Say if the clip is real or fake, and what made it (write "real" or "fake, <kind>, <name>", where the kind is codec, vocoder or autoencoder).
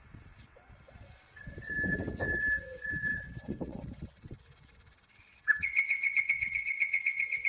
fake, vocoder, WaveNeXt